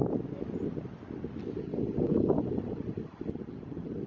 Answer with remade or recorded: recorded